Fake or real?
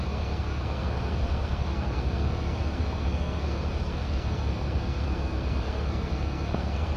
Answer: fake